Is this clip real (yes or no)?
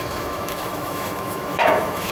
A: no